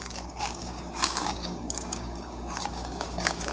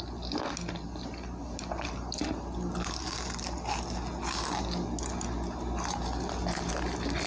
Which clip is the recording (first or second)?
second